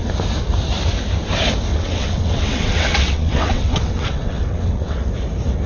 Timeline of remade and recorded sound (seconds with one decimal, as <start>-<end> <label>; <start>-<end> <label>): 0.0-1.7 recorded; 1.7-5.1 remade; 5.1-5.7 recorded